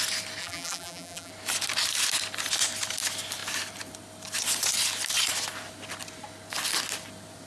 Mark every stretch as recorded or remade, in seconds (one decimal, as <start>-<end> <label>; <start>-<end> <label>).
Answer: 0.0-0.4 recorded; 0.4-1.3 remade; 1.3-7.5 recorded